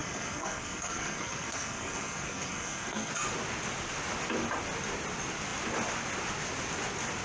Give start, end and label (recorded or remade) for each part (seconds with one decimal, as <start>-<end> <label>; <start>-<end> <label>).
0.0-3.1 remade; 3.1-7.2 recorded